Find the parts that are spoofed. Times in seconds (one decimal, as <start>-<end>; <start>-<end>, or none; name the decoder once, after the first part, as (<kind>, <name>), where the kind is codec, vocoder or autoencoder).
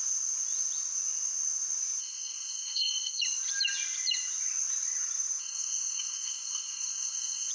2.0-3.2 (codec, SNAC); 5.4-7.5